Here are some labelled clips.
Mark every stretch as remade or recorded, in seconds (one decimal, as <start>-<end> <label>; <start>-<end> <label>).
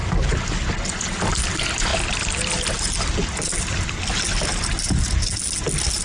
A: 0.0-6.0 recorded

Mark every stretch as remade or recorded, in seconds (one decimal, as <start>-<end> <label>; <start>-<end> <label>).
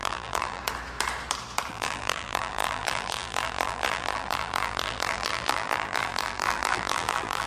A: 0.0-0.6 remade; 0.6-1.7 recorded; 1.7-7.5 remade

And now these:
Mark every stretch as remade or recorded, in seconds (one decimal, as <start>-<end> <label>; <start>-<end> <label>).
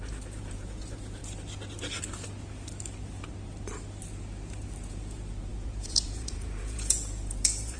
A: 0.0-1.2 remade; 1.2-4.9 recorded; 4.9-7.8 remade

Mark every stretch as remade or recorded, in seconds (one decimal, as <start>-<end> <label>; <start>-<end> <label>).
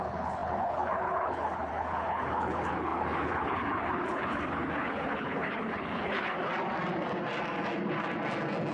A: 0.0-6.5 remade; 6.5-8.7 recorded